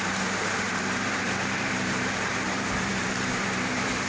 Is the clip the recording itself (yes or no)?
no